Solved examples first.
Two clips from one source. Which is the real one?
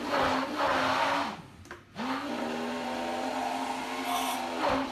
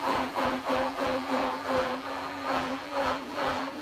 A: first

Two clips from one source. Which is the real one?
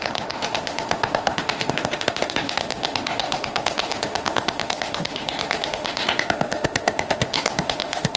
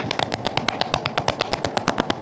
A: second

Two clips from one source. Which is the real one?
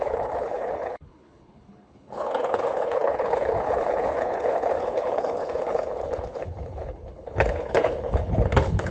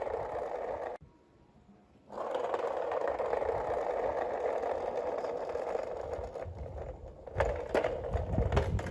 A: second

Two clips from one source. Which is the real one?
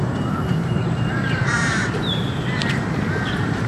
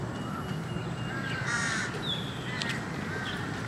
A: second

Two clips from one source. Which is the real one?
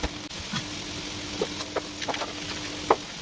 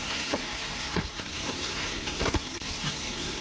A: first